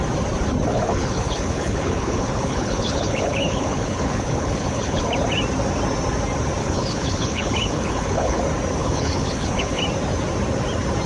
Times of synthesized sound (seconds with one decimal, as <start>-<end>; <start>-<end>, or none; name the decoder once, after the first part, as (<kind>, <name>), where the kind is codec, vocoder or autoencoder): 0.7-5.0 (codec, HILCodec); 6.6-8.4; 8.8-9.8